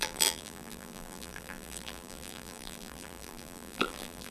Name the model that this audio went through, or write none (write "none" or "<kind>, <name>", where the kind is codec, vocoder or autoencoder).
vocoder, BigVGAN v2